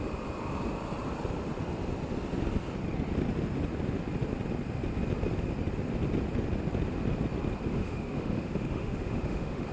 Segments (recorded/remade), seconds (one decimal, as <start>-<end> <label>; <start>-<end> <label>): 0.0-7.7 recorded; 7.7-9.7 remade